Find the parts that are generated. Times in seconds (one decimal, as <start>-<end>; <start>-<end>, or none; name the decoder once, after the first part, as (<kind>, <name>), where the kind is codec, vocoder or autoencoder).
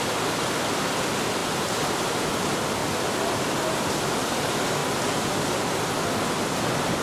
0.0-1.4 (vocoder, BigVGAN v2); 2.0-2.8; 3.9-4.8; 6.4-7.0